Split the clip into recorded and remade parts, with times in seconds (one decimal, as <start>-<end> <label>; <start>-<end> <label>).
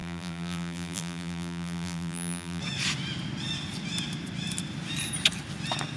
0.0-2.6 remade; 2.6-6.0 recorded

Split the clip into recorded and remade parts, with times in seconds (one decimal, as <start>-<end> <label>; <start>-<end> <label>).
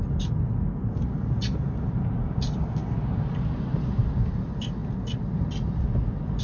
0.0-6.4 recorded